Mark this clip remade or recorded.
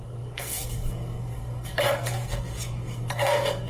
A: remade